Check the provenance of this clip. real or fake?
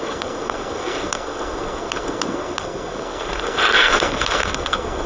fake